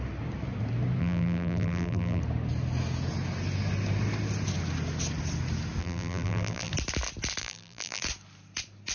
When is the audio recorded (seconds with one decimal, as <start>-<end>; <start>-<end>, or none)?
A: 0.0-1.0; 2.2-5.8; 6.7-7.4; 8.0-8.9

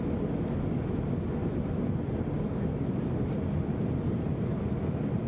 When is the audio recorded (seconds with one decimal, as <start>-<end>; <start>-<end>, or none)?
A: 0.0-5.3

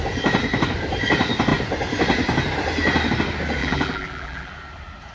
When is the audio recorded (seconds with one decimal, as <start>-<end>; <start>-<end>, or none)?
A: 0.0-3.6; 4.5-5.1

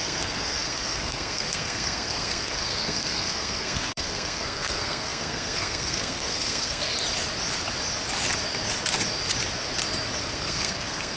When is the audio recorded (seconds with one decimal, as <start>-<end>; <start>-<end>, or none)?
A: 6.9-10.2